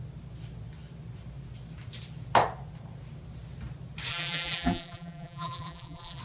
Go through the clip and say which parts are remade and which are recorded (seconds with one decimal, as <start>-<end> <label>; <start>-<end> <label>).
0.0-4.1 recorded; 4.1-6.2 remade